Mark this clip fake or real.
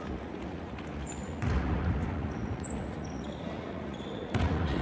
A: fake